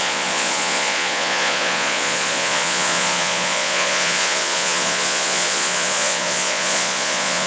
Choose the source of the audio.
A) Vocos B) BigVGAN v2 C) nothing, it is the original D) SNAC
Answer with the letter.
A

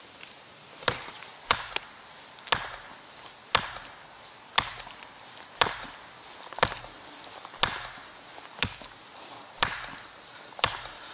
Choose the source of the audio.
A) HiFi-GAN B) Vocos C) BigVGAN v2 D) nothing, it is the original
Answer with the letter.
D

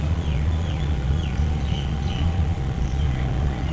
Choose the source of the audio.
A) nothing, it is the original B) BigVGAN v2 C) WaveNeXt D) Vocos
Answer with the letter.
D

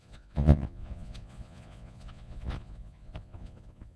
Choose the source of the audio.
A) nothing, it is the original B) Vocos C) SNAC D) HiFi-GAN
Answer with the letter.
B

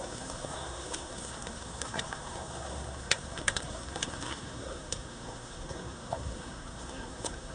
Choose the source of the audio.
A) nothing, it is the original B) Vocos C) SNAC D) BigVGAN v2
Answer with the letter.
C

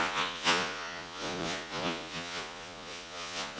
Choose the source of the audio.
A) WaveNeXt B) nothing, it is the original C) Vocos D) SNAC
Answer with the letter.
C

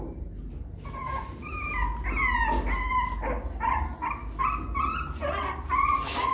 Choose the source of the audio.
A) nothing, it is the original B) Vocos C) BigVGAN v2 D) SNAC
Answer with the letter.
A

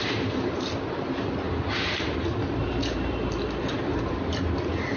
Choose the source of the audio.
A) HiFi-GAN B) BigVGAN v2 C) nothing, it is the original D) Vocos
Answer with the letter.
B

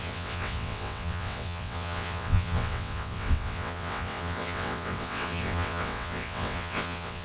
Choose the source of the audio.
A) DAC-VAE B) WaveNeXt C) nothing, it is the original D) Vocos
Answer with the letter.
B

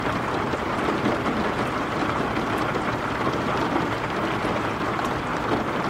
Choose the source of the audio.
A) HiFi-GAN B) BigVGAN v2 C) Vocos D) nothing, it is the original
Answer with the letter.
D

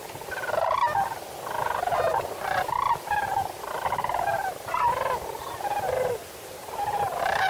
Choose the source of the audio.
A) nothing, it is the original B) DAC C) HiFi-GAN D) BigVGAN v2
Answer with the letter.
A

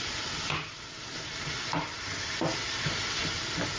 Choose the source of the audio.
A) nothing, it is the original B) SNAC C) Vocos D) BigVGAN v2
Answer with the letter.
D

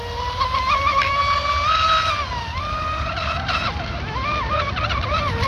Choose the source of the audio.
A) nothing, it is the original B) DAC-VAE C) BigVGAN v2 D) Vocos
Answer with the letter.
A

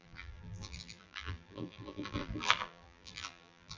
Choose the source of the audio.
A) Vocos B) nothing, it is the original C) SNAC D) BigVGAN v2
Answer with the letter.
D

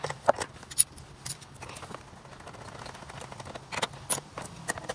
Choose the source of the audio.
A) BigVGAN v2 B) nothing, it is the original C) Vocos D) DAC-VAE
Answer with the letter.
B